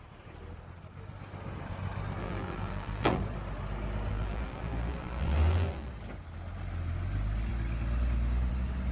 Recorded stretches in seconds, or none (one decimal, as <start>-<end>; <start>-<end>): 0.0-2.2; 3.2-4.1; 5.9-8.9